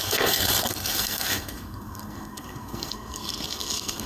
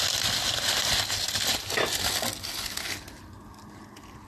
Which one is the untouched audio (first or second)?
second